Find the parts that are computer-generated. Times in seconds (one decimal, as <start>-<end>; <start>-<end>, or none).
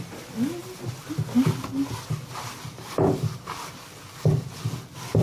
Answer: none